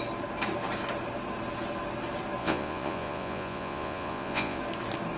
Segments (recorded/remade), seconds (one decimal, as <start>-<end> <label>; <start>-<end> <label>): 0.0-2.4 recorded; 2.4-4.6 remade; 4.6-5.2 recorded